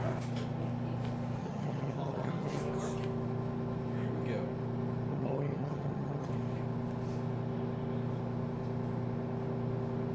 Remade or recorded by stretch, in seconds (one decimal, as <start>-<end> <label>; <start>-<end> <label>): 0.0-1.4 recorded; 1.4-2.6 remade; 2.6-5.1 recorded; 5.1-6.3 remade; 6.3-10.1 recorded

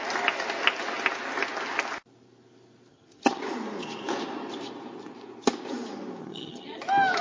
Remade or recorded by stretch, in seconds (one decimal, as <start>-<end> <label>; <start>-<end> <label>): 0.0-2.9 recorded; 2.9-3.4 remade; 3.4-6.2 recorded; 6.2-6.8 remade; 6.8-7.2 recorded

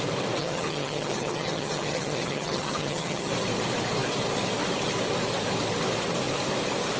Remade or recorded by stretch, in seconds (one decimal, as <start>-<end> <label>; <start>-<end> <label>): 0.0-0.4 recorded; 0.4-3.3 remade; 3.3-7.0 recorded